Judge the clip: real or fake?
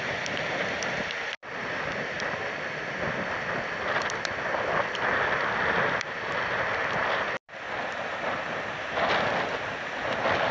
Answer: real